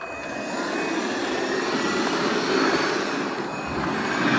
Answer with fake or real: real